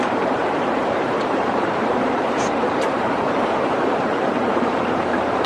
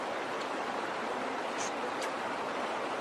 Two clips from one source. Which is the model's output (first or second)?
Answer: first